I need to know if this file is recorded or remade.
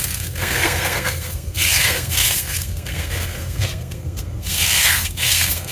remade